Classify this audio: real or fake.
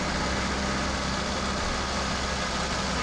real